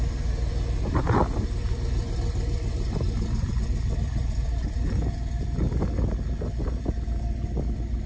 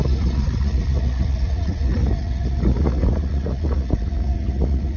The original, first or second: first